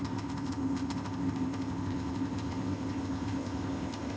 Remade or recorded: remade